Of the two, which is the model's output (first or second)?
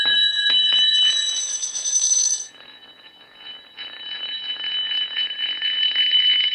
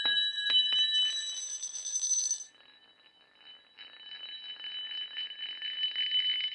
first